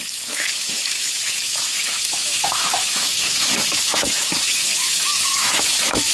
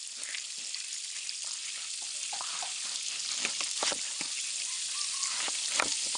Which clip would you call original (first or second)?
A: second